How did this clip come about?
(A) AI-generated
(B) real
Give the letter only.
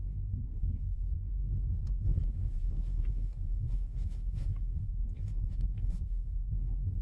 A